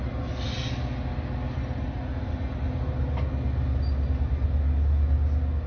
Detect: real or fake real